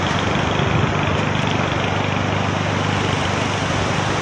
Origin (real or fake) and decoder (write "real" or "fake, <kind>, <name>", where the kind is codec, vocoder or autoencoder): real